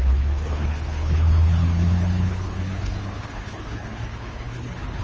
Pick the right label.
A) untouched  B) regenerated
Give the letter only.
B